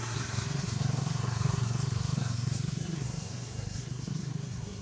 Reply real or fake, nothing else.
fake